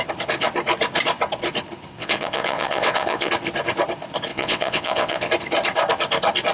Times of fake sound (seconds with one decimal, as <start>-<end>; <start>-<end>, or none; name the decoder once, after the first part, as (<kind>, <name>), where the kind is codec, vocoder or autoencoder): 2.0-3.3 (vocoder, WaveNeXt); 4.3-5.3